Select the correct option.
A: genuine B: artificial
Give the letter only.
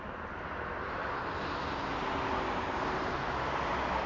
A